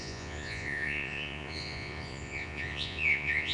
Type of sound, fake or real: fake